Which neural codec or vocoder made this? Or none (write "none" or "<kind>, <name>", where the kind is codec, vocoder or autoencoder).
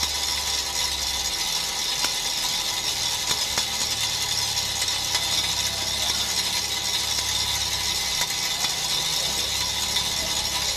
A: none